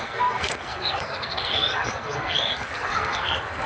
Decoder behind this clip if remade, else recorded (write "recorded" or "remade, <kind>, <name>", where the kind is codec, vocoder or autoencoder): remade, codec, SNAC